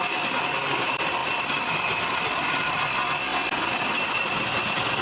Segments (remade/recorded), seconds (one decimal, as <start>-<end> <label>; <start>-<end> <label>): 0.0-1.2 remade; 1.2-2.0 recorded; 2.0-3.3 remade; 3.3-5.0 recorded